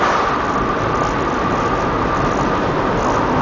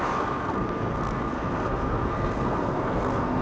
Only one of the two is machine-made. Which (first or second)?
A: second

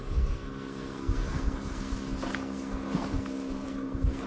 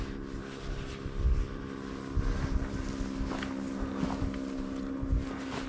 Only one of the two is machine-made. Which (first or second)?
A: first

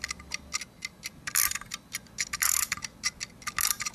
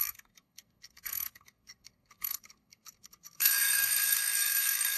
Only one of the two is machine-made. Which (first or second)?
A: second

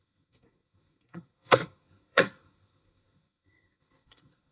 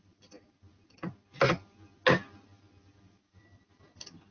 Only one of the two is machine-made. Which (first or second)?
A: first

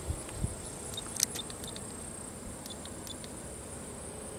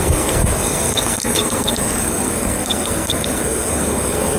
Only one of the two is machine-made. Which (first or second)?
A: second